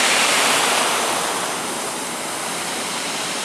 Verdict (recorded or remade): remade